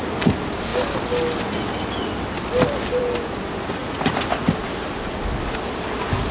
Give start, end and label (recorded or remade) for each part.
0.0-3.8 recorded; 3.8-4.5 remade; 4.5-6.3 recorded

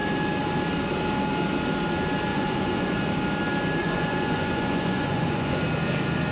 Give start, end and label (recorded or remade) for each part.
0.0-2.3 recorded; 2.3-3.0 remade; 3.0-3.8 recorded; 3.8-5.6 remade; 5.6-6.3 recorded